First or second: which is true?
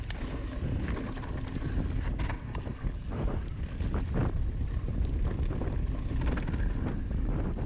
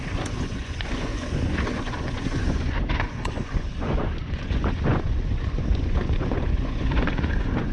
first